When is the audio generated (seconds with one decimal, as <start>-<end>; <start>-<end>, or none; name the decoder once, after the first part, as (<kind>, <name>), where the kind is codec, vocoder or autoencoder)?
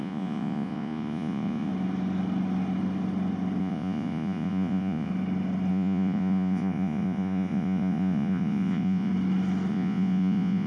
0.0-1.7 (vocoder, Vocos); 3.6-5.1; 5.7-9.1; 9.7-10.7